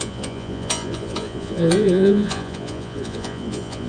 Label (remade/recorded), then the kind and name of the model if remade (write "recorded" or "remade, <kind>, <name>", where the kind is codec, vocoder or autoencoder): remade, vocoder, Vocos